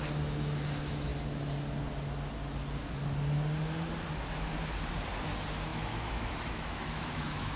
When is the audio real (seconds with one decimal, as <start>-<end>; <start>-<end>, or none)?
0.0-5.7